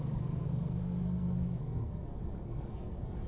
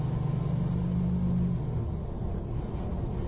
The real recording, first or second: second